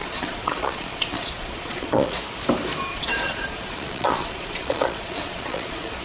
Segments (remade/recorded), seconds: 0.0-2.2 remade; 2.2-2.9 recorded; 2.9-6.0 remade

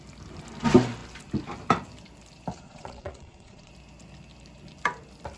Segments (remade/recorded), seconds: 0.0-2.5 recorded; 2.5-3.7 remade; 3.7-5.4 recorded

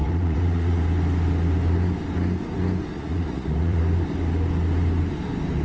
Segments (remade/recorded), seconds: 0.0-0.8 remade; 0.8-2.9 recorded; 2.9-3.8 remade; 3.8-5.6 recorded